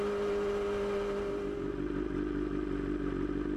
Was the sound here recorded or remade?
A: recorded